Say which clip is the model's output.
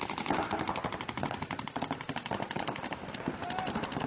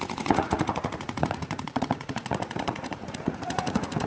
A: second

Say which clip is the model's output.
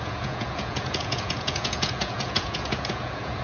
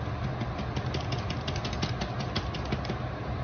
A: first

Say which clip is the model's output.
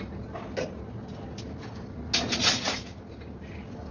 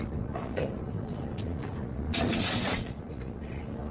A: second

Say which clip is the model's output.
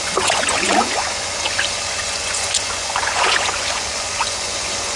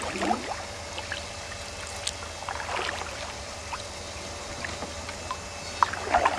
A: first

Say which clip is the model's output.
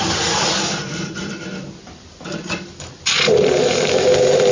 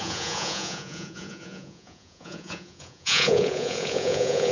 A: second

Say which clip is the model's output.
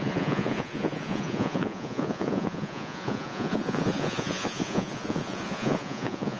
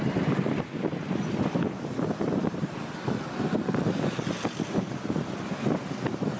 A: first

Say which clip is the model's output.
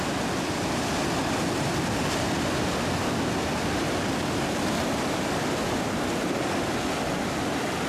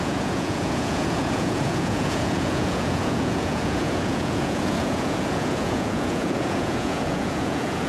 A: second